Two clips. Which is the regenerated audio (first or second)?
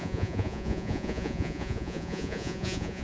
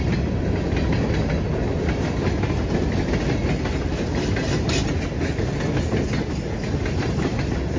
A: first